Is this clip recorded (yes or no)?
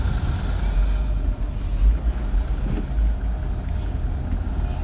yes